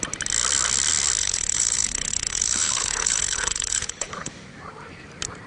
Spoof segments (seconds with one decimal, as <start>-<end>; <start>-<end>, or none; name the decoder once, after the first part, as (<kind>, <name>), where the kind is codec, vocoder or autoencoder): 1.2-4.3 (codec, HILCodec)